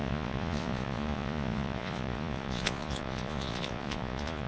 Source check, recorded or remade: remade